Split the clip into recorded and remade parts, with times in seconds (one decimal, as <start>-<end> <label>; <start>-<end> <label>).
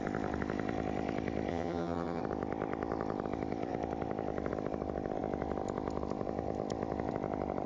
0.0-1.5 recorded; 1.5-2.2 remade; 2.2-7.7 recorded